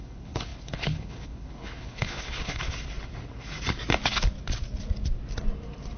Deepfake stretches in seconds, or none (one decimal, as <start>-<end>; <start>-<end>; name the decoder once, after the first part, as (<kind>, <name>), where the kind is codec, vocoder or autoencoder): 0.0-2.6 (codec, HILCodec)